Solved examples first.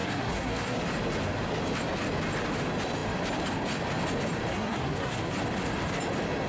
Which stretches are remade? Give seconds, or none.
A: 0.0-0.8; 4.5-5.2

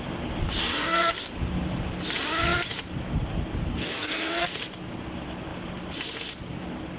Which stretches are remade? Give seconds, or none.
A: 0.6-1.1; 3.7-4.6